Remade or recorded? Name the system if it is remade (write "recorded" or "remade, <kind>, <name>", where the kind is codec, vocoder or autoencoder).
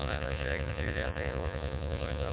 remade, vocoder, Vocos